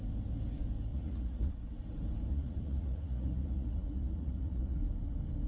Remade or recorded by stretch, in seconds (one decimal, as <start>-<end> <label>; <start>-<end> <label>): 0.0-0.9 recorded; 0.9-1.5 remade; 1.5-2.3 recorded; 2.3-4.8 remade; 4.8-5.5 recorded